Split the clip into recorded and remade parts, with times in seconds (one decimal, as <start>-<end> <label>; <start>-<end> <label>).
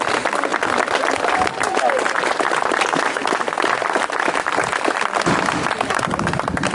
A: 0.0-6.7 recorded